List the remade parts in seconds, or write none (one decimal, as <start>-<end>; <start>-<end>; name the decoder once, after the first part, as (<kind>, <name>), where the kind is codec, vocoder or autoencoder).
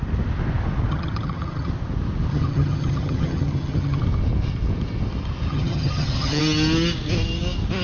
0.9-1.7 (vocoder, HiFi-GAN); 2.3-4.0; 5.5-6.4